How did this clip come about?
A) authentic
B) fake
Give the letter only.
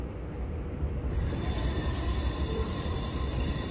B